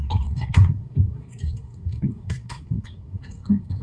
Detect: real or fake fake